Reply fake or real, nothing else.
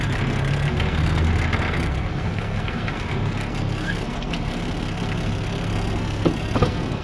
fake